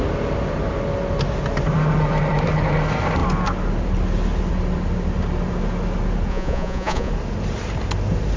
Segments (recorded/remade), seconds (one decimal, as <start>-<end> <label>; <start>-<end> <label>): 0.0-6.3 recorded; 6.3-7.1 remade; 7.1-8.4 recorded